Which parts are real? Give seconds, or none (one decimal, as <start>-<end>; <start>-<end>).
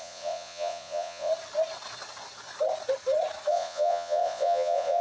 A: 1.3-3.5